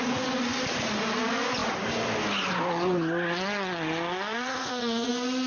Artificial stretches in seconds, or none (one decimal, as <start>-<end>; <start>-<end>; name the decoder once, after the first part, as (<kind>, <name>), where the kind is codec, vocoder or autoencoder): 4.3-5.1 (vocoder, Vocos)